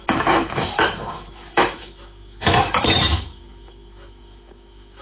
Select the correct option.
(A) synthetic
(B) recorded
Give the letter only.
A